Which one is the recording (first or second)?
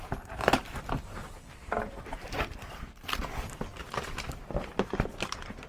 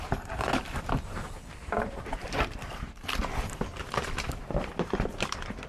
first